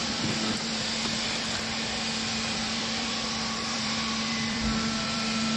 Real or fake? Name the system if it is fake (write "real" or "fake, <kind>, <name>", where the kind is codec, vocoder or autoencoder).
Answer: fake, vocoder, BigVGAN v2